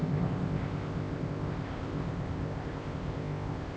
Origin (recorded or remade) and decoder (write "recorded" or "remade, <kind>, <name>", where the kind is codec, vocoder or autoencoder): remade, codec, ZipCodec